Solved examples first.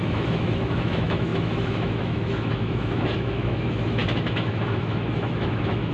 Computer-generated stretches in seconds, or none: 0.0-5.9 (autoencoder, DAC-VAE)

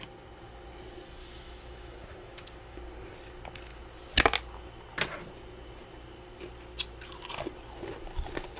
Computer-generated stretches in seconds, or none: 1.2-2.8 (autoencoder, DAC-VAE)